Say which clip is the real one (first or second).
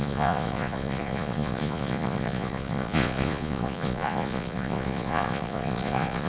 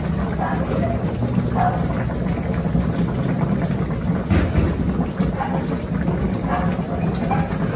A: second